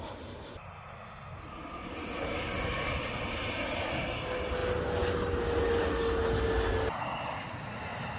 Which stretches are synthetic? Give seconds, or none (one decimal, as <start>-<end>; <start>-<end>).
none

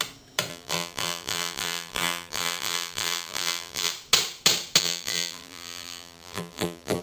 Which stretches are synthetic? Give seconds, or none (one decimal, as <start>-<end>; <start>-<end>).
0.5-3.9; 4.8-7.0